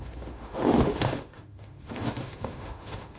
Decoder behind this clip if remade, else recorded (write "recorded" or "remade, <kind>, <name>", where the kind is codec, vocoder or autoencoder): remade, autoencoder, DAC-VAE